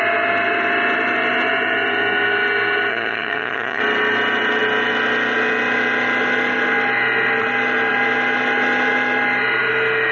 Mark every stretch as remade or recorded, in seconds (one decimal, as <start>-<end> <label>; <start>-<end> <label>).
0.0-2.9 recorded; 2.9-3.8 remade; 3.8-10.1 recorded